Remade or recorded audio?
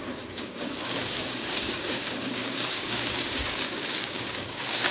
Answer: remade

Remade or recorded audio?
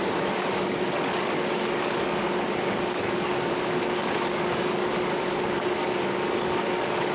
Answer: remade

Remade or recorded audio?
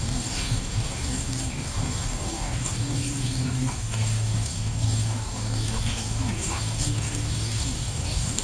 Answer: remade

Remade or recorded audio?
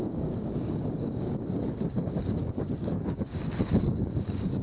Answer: remade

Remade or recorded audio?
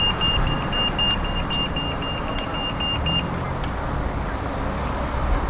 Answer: recorded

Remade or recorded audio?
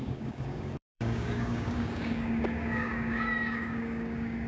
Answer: remade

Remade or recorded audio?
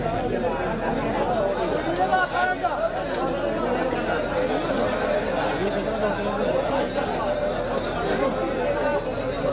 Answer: recorded